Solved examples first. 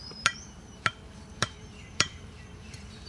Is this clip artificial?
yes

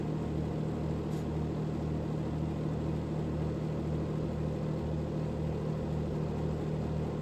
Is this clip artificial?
no